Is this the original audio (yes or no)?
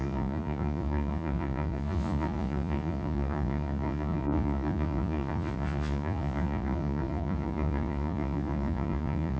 no